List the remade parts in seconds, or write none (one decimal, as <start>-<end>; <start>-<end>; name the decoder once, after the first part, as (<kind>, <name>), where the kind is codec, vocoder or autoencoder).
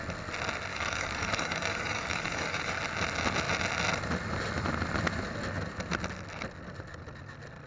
0.7-2.8 (codec, DAC)